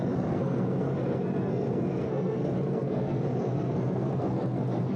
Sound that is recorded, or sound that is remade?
remade